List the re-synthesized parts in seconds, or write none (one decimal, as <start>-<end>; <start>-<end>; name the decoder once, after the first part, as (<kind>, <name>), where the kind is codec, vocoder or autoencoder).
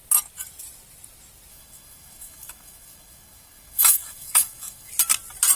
1.5-4.9 (autoencoder, DAC-VAE)